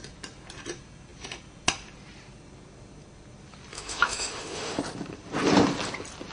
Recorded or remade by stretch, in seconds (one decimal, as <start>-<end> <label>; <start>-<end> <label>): 0.0-3.7 recorded; 3.7-4.8 remade; 4.8-6.3 recorded

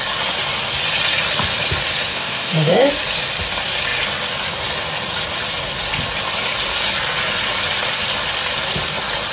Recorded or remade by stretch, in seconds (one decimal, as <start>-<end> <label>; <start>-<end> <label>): 0.0-2.1 recorded; 2.1-2.9 remade; 2.9-9.3 recorded

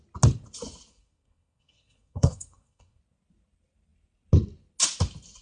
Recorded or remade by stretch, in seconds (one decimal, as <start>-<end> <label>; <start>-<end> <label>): 0.0-0.9 recorded; 0.9-3.0 remade; 3.0-5.4 recorded

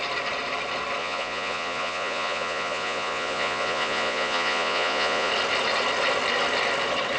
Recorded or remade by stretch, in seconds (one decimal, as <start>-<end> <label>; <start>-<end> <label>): 0.0-1.0 recorded; 1.0-5.3 remade; 5.3-7.2 recorded

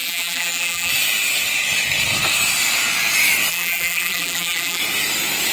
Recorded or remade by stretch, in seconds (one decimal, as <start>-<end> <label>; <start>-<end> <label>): 0.0-0.9 remade; 0.9-3.5 recorded; 3.5-4.8 remade; 4.8-5.5 recorded